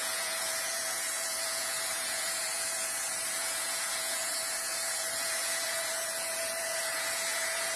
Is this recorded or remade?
remade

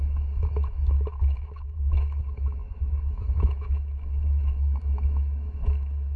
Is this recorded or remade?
remade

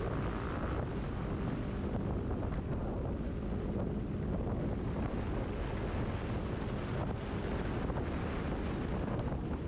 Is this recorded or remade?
recorded